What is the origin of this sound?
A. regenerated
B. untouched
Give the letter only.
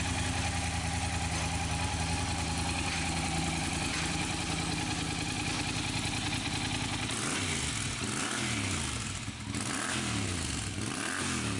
B